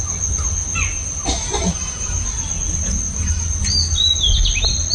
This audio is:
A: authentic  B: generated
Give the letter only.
A